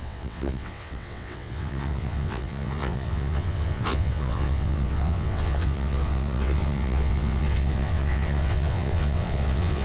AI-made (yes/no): yes